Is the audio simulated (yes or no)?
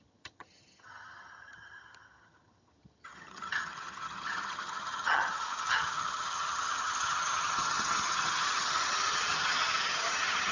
yes